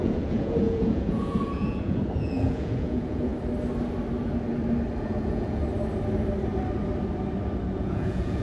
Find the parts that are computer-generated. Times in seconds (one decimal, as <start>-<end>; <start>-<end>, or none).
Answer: 0.0-3.3; 5.0-5.6; 7.7-8.4